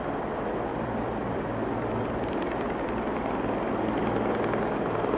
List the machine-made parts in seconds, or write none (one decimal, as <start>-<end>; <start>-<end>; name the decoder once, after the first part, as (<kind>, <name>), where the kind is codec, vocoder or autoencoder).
0.7-3.7 (vocoder, BigVGAN v2)